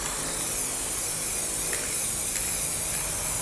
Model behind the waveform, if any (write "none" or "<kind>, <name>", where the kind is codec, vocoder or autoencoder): none